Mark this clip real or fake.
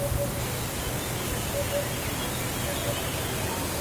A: real